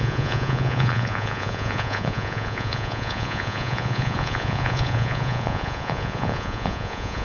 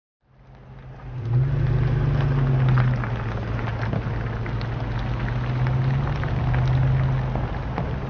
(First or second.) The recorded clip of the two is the second